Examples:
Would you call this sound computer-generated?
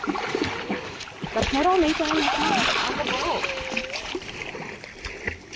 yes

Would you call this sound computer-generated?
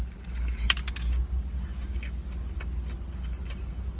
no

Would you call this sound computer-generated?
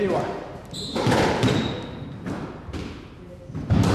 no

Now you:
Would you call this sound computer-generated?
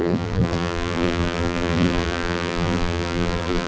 yes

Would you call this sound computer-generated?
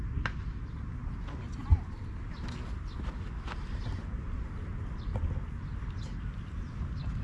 no